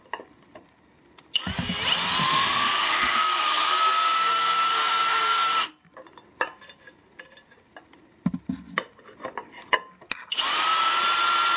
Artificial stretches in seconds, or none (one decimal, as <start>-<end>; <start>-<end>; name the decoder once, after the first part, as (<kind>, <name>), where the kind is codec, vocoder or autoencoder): 2.2-5.7 (autoencoder, DAC-VAE)